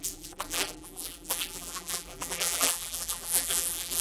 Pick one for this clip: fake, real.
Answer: fake